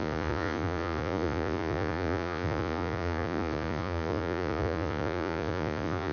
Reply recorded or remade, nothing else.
remade